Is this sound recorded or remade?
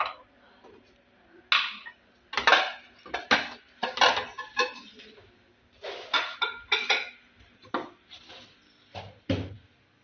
recorded